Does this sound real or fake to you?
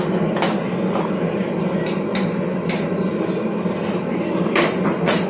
real